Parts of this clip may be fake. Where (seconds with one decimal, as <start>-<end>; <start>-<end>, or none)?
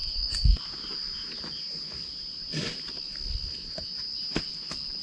0.0-0.6